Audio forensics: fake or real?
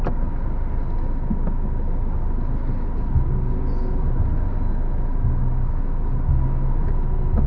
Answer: real